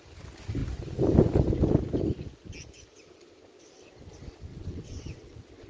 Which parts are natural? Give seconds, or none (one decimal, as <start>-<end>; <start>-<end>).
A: 0.0-4.5